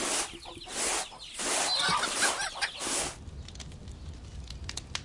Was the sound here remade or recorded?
recorded